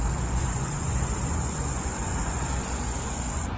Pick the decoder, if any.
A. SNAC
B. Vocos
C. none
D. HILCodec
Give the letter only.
B